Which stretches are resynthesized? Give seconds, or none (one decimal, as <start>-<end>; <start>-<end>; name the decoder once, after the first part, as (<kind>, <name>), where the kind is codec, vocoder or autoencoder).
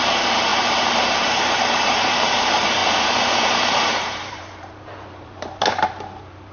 0.0-2.8 (vocoder, BigVGAN v2); 3.8-6.5